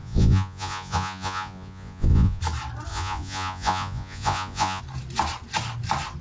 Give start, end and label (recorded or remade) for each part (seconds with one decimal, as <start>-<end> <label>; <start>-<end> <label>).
0.0-2.4 remade; 2.4-2.9 recorded; 2.9-4.8 remade; 4.8-6.2 recorded